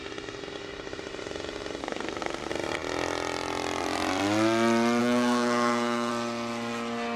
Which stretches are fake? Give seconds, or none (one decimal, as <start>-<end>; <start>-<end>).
1.8-2.5; 5.0-6.1